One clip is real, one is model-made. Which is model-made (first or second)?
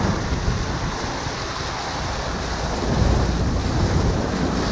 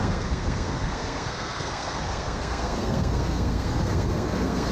second